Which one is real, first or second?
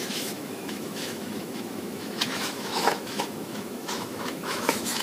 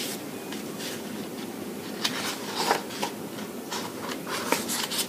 second